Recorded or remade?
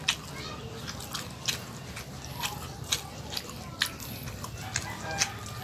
recorded